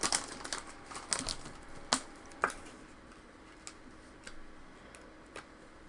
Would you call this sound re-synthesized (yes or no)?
no